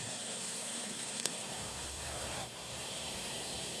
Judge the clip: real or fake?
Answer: fake